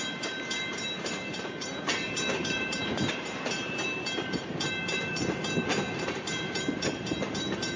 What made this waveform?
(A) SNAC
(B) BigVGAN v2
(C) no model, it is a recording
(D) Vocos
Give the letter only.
B